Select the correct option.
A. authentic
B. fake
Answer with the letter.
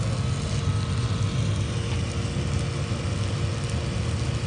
A